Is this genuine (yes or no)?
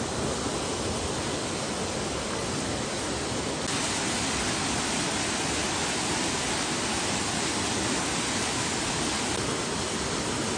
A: yes